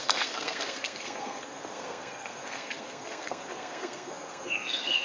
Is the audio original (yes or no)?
no